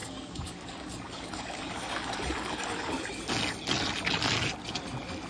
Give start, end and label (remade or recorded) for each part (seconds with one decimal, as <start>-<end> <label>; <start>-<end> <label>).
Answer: 0.0-3.2 remade; 3.2-5.3 recorded